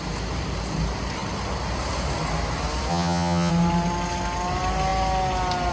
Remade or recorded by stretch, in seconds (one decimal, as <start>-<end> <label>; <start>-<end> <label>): 0.0-2.9 recorded; 2.9-3.5 remade; 3.5-5.7 recorded